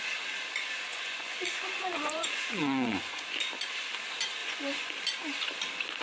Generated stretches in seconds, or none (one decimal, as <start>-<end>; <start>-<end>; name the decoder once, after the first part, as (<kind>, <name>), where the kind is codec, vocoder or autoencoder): 0.9-3.2 (vocoder, Vocos); 4.4-4.9